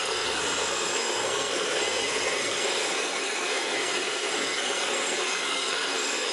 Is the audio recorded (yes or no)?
no